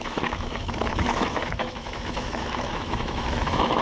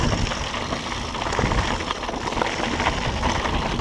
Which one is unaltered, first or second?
second